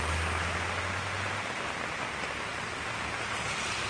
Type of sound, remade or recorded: recorded